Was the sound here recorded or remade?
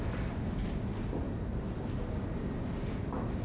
recorded